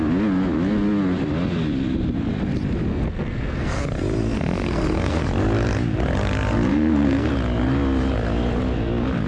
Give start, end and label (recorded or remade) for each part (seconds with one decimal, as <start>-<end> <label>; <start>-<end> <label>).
0.0-2.9 recorded; 2.9-3.8 remade; 3.8-4.2 recorded; 4.2-5.2 remade; 5.2-6.7 recorded; 6.7-7.3 remade; 7.3-9.3 recorded